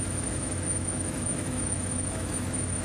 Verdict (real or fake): fake